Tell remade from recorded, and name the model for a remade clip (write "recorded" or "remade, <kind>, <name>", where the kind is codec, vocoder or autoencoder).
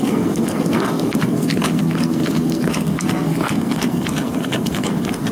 remade, codec, SNAC